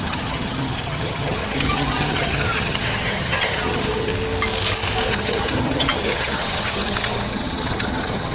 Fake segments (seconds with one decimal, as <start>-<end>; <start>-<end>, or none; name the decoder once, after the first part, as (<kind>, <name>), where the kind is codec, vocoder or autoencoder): 0.0-4.1 (vocoder, HiFi-GAN); 5.1-8.3